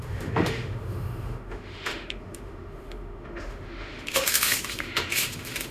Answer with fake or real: fake